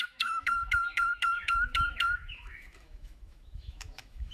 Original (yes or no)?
no